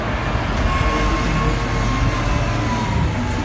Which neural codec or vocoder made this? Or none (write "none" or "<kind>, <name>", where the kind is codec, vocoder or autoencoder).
none